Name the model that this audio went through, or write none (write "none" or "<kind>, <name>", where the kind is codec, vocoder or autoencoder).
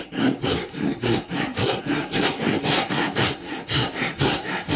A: codec, SNAC